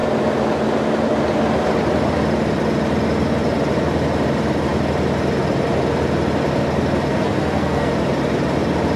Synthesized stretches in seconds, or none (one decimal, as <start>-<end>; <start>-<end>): 7.1-7.9